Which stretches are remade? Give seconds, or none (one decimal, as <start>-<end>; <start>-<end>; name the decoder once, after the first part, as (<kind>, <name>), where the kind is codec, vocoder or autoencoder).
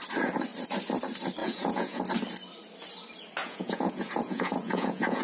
1.4-2.0 (vocoder, Vocos); 3.4-5.2